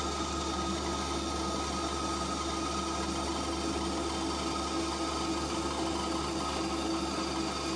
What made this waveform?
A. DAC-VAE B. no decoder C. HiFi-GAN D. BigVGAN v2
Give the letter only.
B